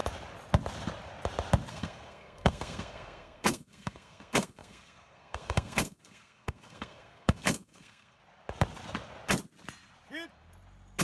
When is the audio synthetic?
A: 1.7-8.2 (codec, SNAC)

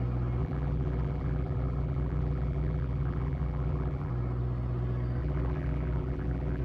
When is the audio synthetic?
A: 0.4-4.1 (vocoder, BigVGAN v2); 5.2-6.6